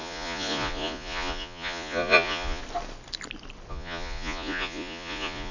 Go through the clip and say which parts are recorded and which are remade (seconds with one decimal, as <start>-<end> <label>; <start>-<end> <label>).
0.0-2.6 remade; 2.6-3.7 recorded; 3.7-5.5 remade